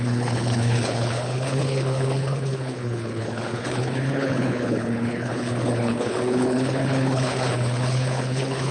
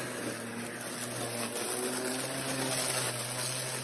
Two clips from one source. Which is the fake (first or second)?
first